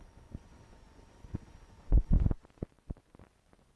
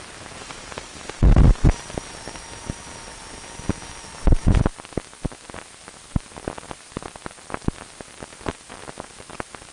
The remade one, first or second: first